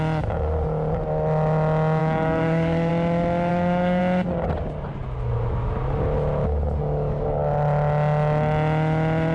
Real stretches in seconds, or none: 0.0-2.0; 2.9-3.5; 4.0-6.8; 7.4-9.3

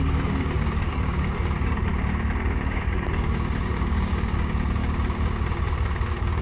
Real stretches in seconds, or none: 1.9-2.4; 4.8-5.8